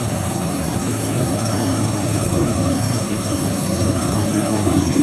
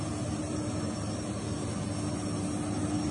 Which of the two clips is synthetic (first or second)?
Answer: first